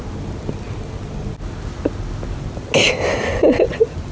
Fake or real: real